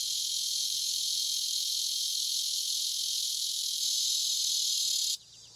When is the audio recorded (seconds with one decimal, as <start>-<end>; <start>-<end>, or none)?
none